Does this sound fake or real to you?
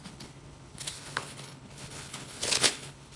fake